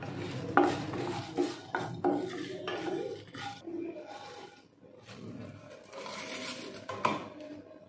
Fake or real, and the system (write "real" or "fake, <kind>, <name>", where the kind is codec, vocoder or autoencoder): real